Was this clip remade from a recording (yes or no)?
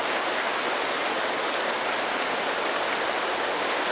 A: no